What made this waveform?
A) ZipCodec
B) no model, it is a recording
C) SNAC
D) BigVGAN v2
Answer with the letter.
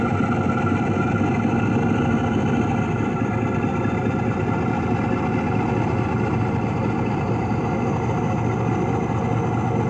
B